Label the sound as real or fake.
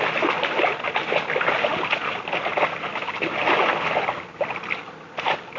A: real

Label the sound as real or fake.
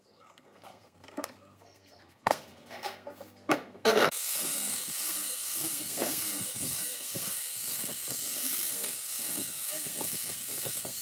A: fake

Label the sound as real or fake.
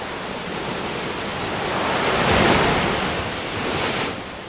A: real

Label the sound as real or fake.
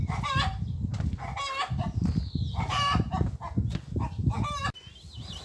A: real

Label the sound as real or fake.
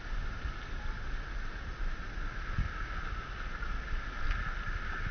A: real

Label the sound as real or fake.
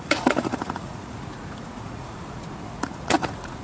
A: fake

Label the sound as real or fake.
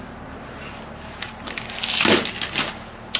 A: real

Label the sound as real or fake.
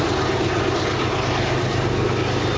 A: real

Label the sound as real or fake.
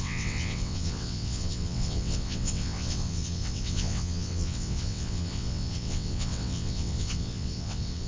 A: fake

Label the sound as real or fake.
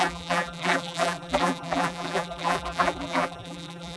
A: fake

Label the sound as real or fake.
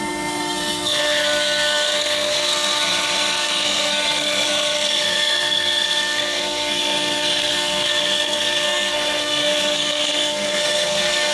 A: fake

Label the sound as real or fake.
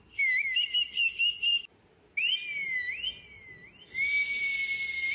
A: real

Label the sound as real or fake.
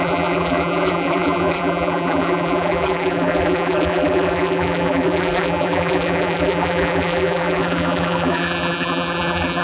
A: fake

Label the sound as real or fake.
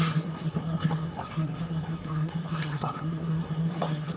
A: fake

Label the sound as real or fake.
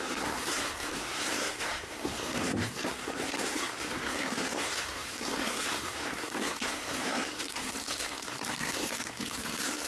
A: fake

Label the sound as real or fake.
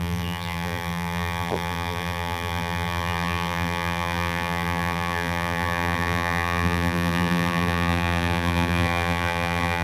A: fake